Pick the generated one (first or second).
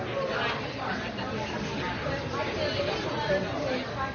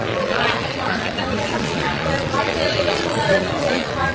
second